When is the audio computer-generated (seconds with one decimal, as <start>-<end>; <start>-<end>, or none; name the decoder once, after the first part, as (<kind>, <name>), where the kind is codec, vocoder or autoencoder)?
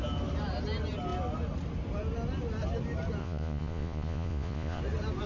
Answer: 3.2-4.8 (vocoder, Vocos)